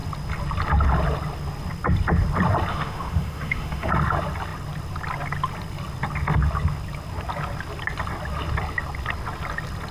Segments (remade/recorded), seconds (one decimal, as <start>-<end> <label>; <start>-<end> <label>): 0.0-2.7 recorded; 2.7-3.9 remade; 3.9-9.9 recorded